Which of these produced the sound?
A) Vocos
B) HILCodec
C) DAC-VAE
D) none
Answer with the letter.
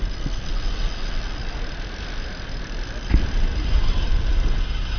D